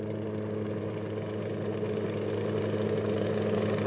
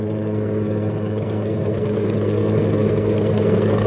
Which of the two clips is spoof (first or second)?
second